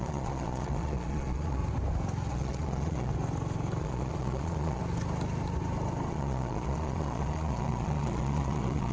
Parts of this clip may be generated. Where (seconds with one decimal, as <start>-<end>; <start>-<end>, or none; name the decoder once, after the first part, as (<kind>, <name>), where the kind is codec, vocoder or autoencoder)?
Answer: 0.0-1.6 (vocoder, Vocos); 2.3-3.1; 3.8-4.8; 6.1-8.9

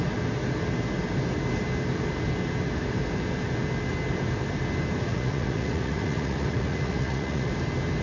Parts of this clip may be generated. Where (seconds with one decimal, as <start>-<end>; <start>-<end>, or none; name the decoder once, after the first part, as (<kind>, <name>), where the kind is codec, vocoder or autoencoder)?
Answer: 5.1-7.5 (vocoder, Vocos)